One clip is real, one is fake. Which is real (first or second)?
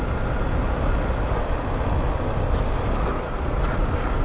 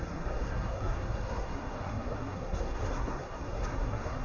first